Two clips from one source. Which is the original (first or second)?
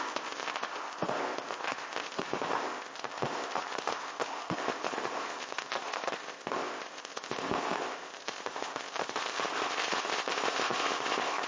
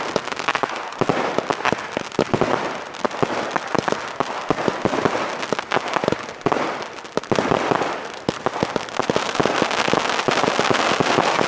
second